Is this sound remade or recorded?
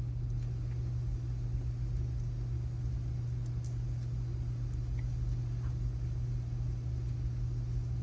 recorded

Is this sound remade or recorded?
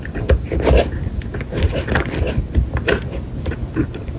recorded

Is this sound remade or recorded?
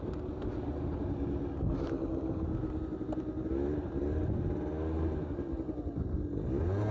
recorded